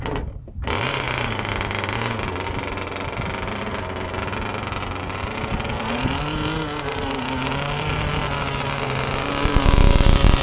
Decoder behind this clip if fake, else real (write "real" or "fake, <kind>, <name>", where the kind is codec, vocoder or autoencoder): real